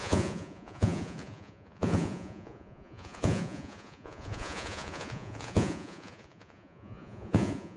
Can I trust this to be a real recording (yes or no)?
no